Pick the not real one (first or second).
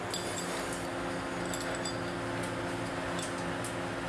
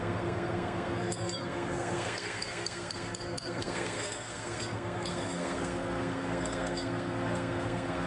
second